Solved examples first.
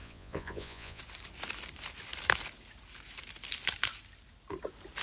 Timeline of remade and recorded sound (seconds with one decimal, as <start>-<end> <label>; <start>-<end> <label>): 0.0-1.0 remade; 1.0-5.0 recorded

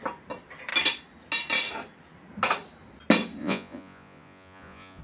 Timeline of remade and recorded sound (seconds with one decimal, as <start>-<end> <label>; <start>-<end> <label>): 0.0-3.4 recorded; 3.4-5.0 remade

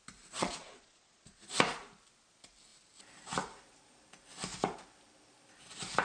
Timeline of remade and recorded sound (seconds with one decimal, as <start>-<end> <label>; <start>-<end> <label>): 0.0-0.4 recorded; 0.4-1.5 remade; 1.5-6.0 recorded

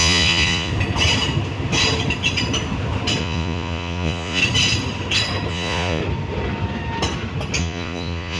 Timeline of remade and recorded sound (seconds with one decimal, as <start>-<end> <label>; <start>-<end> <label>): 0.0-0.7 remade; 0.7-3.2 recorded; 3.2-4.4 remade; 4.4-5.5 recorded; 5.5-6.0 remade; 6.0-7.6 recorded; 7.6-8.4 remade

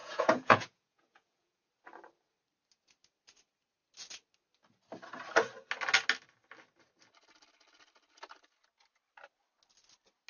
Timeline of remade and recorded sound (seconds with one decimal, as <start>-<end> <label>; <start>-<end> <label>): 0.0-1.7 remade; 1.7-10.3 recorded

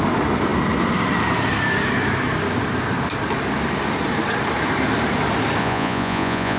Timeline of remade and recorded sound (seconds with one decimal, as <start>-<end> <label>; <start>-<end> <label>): 0.0-5.6 recorded; 5.6-6.6 remade